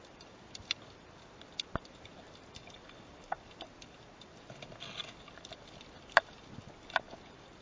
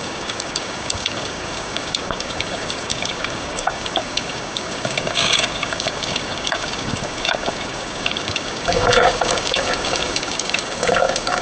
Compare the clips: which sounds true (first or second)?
first